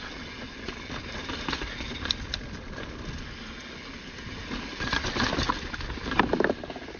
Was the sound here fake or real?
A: real